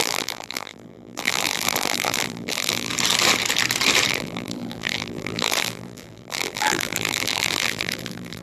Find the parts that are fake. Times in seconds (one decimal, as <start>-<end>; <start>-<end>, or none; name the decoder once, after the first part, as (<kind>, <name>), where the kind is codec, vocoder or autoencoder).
0.0-2.9 (vocoder, BigVGAN v2); 4.1-8.4